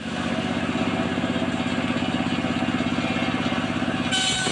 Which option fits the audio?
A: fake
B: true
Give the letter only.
B